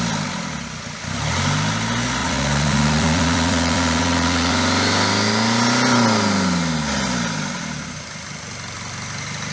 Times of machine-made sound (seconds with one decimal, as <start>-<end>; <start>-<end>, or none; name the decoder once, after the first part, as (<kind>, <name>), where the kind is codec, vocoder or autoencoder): 2.2-4.5 (vocoder, Vocos)